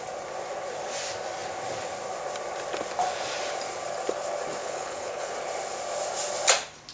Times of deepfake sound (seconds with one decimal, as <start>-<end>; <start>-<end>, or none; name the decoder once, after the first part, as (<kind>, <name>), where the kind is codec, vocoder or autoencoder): 4.6-5.3 (codec, HILCodec)